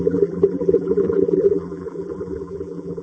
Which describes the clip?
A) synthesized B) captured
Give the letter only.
A